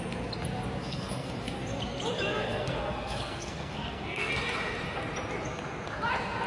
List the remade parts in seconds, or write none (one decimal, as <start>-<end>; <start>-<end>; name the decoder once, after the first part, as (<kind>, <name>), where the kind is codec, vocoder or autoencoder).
0.8-1.3 (codec, SNAC); 2.3-4.3